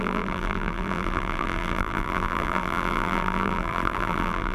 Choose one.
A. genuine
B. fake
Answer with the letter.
B